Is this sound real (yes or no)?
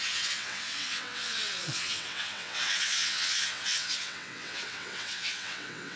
no